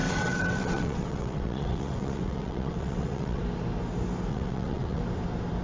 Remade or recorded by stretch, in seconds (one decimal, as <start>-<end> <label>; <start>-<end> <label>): 0.0-3.4 remade; 3.4-4.3 recorded; 4.3-5.0 remade; 5.0-5.6 recorded